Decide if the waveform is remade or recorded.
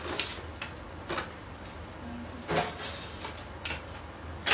recorded